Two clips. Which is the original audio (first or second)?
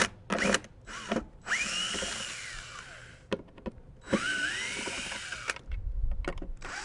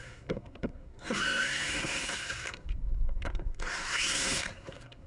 first